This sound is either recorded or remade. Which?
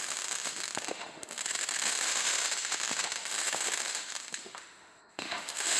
remade